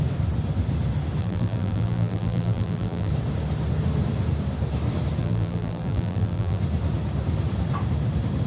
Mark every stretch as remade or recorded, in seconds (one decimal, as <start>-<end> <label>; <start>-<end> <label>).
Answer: 0.0-1.2 recorded; 1.2-3.1 remade; 3.1-5.2 recorded; 5.2-6.6 remade; 6.6-8.5 recorded